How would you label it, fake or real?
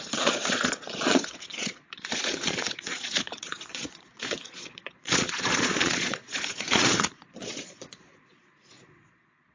fake